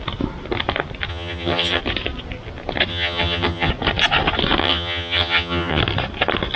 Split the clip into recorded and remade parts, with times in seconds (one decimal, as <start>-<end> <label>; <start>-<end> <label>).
0.0-1.1 recorded; 1.1-1.8 remade; 1.8-2.9 recorded; 2.9-3.7 remade; 3.7-4.6 recorded; 4.6-5.8 remade; 5.8-6.6 recorded